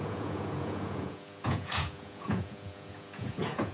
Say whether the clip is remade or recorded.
remade